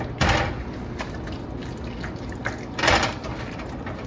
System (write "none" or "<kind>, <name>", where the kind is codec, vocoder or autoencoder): none